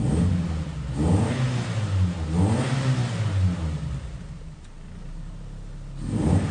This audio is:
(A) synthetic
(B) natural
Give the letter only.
B